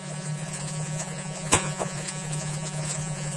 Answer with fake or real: fake